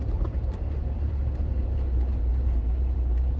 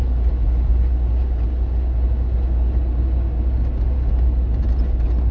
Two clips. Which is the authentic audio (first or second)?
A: second